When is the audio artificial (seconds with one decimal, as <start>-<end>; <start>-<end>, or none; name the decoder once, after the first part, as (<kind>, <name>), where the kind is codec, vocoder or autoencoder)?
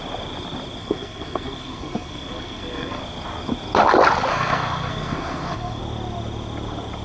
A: 0.8-3.0 (codec, SNAC); 4.3-5.8